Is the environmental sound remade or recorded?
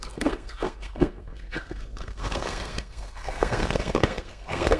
remade